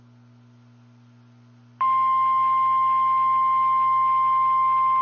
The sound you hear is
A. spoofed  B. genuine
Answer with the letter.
B